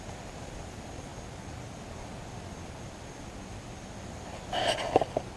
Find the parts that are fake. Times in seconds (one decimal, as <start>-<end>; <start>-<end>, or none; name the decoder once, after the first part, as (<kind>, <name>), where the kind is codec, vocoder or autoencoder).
none